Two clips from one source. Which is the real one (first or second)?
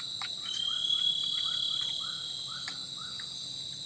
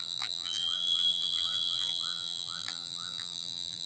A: first